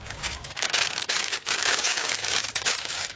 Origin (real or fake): fake